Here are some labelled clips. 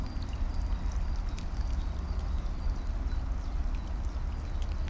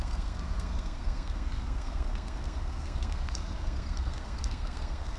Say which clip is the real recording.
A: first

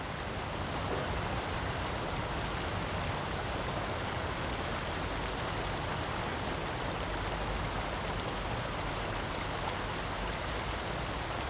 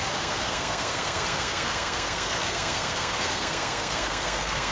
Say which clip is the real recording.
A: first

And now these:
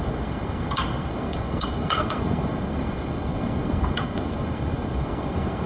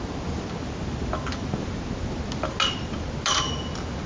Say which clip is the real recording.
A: second